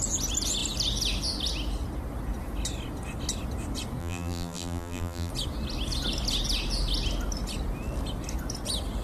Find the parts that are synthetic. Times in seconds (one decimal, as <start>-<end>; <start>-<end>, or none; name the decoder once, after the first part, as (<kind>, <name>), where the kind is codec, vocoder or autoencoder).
4.0-5.3 (vocoder, BigVGAN v2)